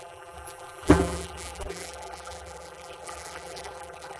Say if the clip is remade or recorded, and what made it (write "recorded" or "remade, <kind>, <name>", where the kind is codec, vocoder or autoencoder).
remade, vocoder, BigVGAN v2